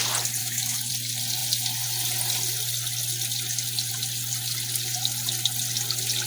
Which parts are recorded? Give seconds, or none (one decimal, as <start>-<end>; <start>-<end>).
0.0-0.4; 0.9-6.3